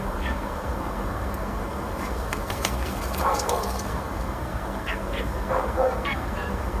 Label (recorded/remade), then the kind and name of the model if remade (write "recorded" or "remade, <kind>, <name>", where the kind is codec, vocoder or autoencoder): remade, codec, SNAC